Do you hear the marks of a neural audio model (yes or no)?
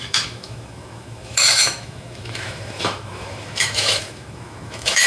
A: yes